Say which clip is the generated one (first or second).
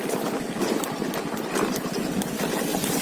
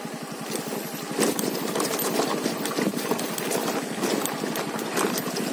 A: first